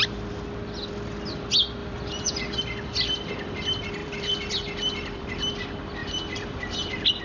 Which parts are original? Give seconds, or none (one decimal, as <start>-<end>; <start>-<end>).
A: 0.0-1.8; 2.6-4.0; 5.5-6.0